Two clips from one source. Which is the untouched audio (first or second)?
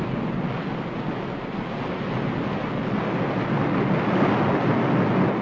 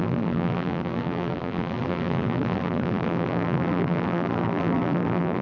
first